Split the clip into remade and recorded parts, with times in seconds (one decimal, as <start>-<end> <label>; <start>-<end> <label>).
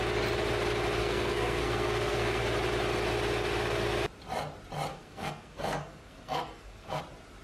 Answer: 0.0-1.0 recorded; 1.0-2.4 remade; 2.4-4.9 recorded; 4.9-7.0 remade; 7.0-7.4 recorded